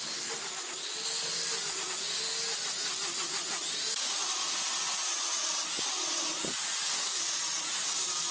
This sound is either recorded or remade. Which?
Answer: recorded